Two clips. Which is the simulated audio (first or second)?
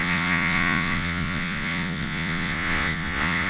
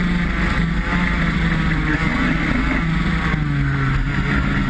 first